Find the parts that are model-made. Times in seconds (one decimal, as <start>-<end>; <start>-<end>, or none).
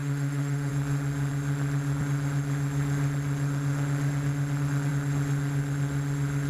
0.0-0.7